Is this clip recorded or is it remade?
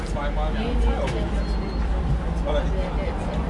recorded